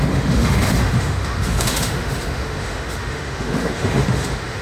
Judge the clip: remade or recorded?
remade